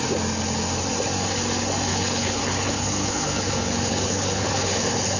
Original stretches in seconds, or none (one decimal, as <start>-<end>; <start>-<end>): 0.0-1.9